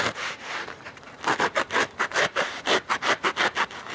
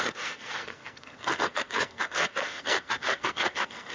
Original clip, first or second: first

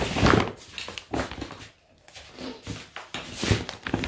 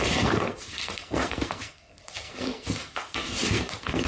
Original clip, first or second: first